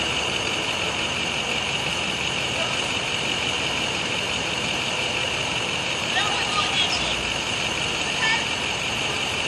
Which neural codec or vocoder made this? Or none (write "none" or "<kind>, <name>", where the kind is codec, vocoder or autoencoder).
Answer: vocoder, BigVGAN v2